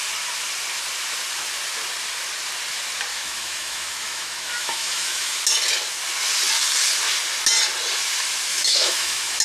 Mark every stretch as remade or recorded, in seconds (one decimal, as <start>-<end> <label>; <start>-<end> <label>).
0.0-3.1 recorded; 3.1-5.4 remade; 5.4-8.5 recorded; 8.5-9.4 remade